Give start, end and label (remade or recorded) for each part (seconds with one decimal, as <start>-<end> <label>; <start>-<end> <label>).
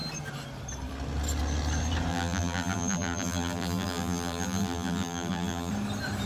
0.0-2.1 recorded; 2.1-5.7 remade; 5.7-6.3 recorded